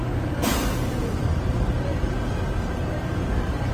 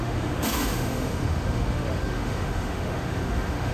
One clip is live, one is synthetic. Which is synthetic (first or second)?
second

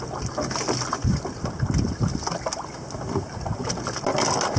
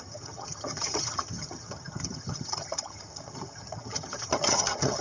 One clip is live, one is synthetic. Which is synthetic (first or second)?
second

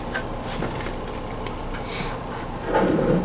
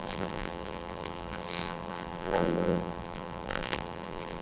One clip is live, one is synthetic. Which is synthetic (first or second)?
second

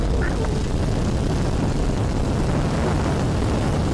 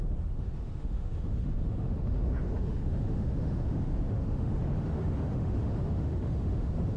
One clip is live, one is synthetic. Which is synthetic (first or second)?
second